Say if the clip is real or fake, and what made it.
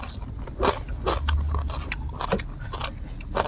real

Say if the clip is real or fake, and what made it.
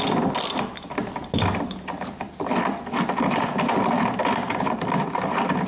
real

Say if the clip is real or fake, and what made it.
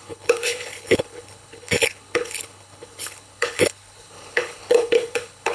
fake, codec, HILCodec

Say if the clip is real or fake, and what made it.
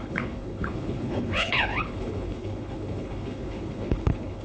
fake, codec, HILCodec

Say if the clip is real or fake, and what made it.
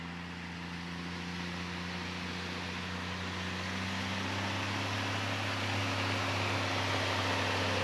real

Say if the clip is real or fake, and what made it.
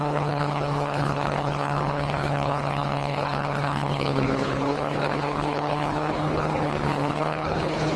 fake, codec, HILCodec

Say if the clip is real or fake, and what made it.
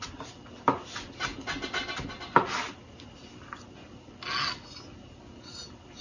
real